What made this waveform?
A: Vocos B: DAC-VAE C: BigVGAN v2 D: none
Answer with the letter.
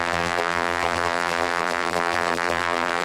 C